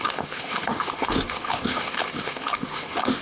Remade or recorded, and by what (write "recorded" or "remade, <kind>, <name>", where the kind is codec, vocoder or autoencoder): remade, autoencoder, DAC-VAE